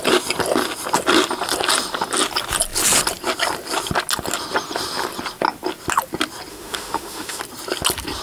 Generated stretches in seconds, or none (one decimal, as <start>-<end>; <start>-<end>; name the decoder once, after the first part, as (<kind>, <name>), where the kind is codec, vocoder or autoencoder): 6.5-7.4 (autoencoder, DAC-VAE)